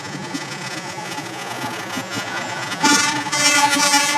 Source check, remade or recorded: remade